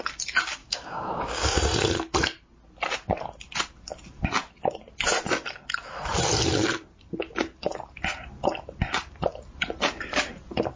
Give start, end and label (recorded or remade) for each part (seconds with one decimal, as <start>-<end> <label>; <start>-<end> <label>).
0.0-0.6 recorded; 0.6-1.6 remade; 1.6-10.8 recorded